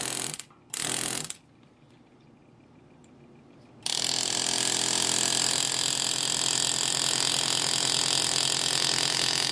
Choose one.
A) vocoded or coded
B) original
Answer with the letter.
A